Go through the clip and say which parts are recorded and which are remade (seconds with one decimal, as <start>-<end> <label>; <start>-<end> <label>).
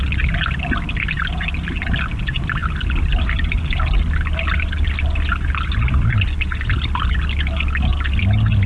0.0-8.7 recorded